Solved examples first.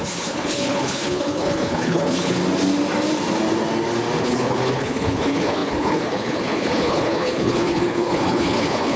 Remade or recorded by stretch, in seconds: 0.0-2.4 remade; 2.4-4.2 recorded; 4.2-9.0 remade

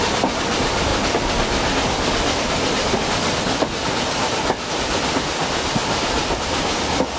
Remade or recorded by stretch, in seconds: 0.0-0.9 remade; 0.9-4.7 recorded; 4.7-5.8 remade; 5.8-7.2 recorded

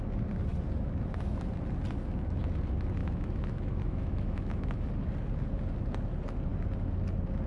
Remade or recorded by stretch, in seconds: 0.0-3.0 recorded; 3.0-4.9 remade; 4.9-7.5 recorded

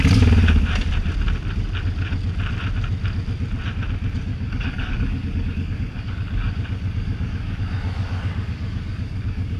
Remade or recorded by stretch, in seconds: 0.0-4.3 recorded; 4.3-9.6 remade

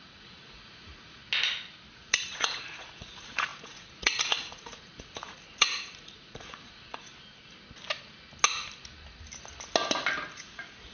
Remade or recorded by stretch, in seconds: 0.0-1.2 remade; 1.2-1.9 recorded; 1.9-7.1 remade; 7.1-10.3 recorded; 10.3-10.9 remade

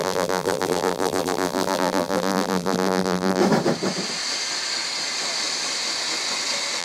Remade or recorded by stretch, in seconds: 0.0-3.4 remade; 3.4-6.8 recorded

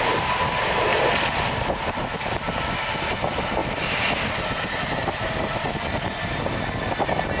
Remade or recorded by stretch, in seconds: 0.0-3.6 recorded; 3.6-4.2 remade; 4.2-7.4 recorded

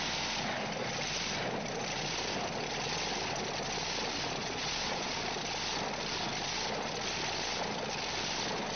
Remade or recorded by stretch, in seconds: 0.0-4.4 recorded; 4.4-5.1 remade; 5.1-8.8 recorded